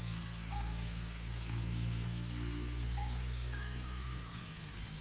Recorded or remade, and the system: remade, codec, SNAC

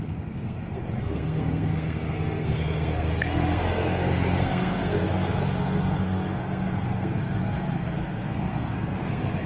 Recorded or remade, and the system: remade, codec, SNAC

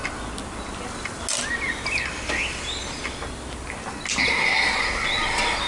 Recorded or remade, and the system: recorded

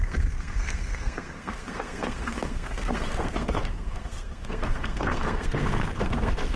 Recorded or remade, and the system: remade, codec, SNAC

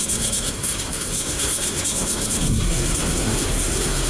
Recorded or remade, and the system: remade, codec, SNAC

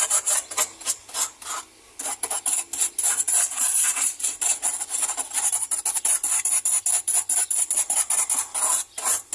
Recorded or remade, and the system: recorded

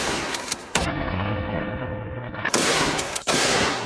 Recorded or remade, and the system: remade, codec, SNAC